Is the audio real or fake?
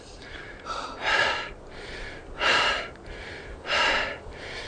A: fake